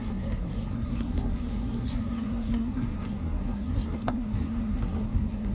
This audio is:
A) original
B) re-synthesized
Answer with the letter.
B